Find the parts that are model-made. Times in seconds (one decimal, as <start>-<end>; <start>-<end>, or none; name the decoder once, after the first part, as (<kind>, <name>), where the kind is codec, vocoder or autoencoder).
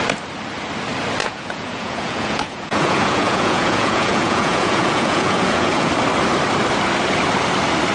1.2-5.9 (vocoder, Vocos)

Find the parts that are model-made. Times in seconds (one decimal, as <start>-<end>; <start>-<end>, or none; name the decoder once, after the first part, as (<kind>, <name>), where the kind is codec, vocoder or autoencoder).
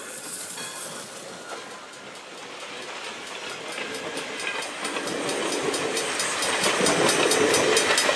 0.0-0.9 (vocoder, Vocos)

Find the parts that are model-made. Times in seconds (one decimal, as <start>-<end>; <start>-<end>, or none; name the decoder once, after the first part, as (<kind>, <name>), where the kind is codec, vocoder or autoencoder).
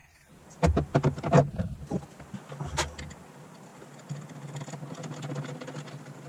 none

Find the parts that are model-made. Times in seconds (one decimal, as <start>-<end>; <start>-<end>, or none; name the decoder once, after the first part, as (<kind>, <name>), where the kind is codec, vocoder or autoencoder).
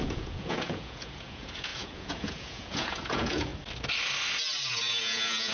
0.0-3.5 (vocoder, Vocos); 5.0-5.5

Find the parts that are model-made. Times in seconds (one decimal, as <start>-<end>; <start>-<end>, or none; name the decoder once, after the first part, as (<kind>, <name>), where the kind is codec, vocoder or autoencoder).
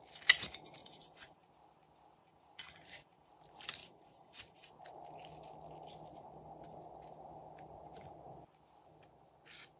0.8-1.5 (vocoder, Vocos); 2.2-3.3; 3.8-4.7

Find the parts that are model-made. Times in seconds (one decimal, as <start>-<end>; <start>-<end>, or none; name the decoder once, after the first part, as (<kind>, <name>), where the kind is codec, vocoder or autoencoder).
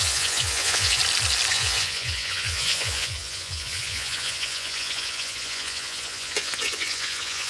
0.0-1.0 (vocoder, Vocos); 1.5-7.5